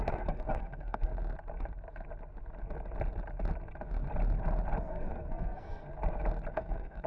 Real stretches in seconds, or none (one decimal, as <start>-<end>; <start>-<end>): 1.1-4.8; 5.9-6.5